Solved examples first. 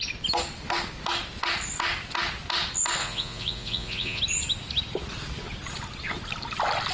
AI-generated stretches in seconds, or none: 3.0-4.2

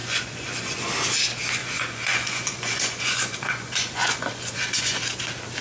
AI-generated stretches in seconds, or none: 0.0-0.8; 1.6-5.0